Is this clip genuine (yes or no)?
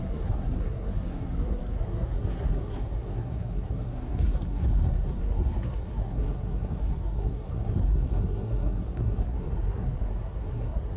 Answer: no